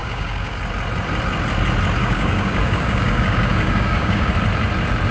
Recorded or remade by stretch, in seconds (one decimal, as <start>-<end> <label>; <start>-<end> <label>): 0.0-0.6 remade; 0.6-2.0 recorded; 2.0-4.3 remade; 4.3-5.1 recorded